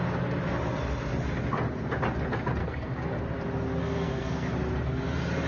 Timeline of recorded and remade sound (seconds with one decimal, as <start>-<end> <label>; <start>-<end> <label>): 0.0-2.6 recorded; 2.6-3.2 remade; 3.2-3.8 recorded; 3.8-4.5 remade; 4.5-5.5 recorded